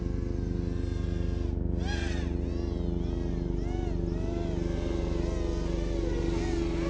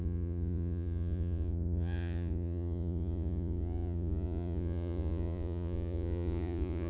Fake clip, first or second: second